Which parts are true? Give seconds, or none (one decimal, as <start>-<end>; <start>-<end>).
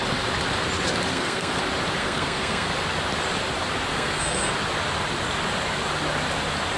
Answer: 0.0-1.1; 1.6-2.0; 2.7-3.9; 4.5-6.8